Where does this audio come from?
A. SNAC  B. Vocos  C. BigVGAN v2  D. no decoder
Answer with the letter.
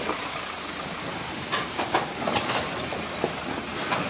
D